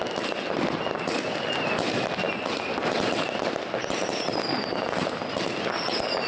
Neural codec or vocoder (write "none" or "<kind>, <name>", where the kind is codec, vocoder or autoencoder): none